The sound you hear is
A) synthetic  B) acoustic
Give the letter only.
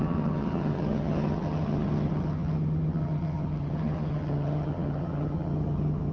A